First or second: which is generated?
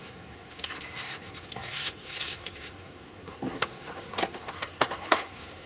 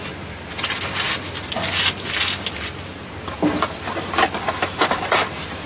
first